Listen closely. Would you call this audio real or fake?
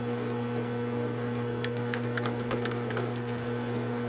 fake